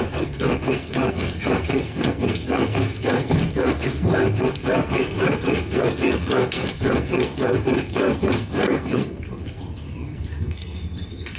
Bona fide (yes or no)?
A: no